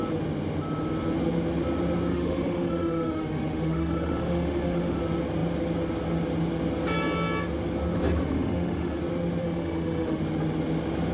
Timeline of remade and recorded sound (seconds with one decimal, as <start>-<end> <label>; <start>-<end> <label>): 0.0-2.1 recorded; 2.1-5.0 remade; 5.0-8.2 recorded; 8.2-9.0 remade; 9.0-9.4 recorded; 9.4-10.2 remade; 10.2-11.1 recorded